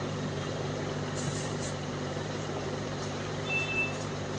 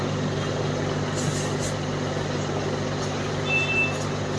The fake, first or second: first